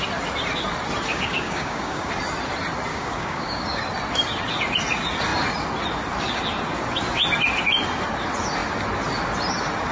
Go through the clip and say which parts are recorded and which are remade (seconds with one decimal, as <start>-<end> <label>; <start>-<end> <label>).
0.0-1.1 recorded; 1.1-2.1 remade; 2.1-2.9 recorded; 2.9-3.8 remade; 3.8-9.9 recorded